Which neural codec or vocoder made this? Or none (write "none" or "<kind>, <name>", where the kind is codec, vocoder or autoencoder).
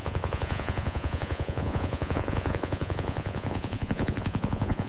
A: vocoder, Vocos